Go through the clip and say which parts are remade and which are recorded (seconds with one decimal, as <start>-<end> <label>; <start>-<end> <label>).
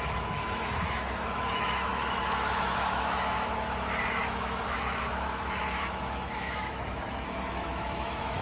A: 0.0-8.4 remade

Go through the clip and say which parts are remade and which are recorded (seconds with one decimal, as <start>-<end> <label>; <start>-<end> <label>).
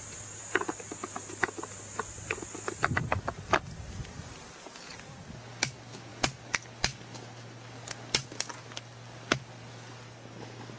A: 0.0-10.8 recorded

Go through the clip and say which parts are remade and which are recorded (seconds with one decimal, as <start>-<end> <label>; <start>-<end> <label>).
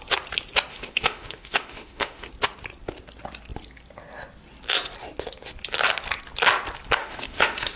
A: 0.0-0.7 recorded; 0.7-2.3 remade; 2.3-7.0 recorded; 7.0-7.8 remade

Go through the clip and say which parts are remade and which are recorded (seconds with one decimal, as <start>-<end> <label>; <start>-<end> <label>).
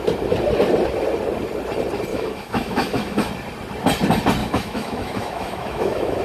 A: 0.0-2.1 recorded; 2.1-3.3 remade; 3.3-4.4 recorded; 4.4-6.2 remade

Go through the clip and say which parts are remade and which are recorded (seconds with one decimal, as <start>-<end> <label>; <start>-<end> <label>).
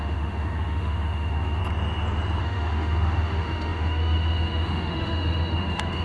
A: 0.0-1.6 remade; 1.6-2.4 recorded; 2.4-6.0 remade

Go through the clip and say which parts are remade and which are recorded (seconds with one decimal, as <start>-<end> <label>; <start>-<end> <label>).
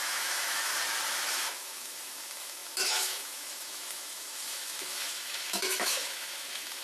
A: 0.0-0.7 remade; 0.7-1.3 recorded; 1.3-6.8 remade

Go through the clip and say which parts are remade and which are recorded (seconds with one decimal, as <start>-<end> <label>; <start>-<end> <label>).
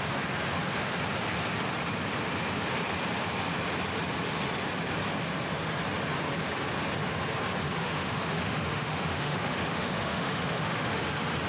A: 0.0-7.8 recorded; 7.8-11.0 remade; 11.0-11.5 recorded